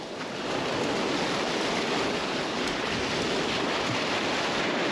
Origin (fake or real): real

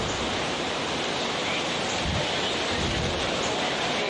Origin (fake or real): real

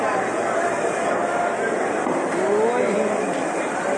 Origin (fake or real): fake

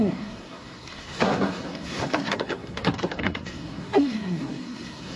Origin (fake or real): fake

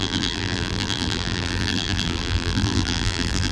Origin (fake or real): fake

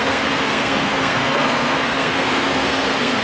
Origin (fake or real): fake